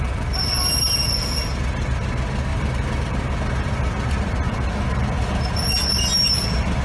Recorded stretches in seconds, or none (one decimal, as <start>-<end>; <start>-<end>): 0.0-2.5